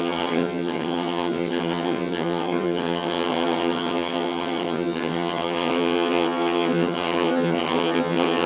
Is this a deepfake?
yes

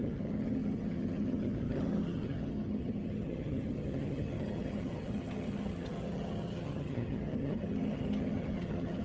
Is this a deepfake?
yes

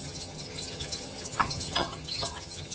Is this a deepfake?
yes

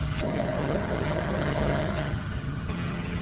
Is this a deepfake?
yes